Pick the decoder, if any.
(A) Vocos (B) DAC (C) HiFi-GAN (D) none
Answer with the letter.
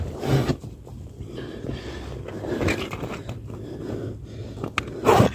D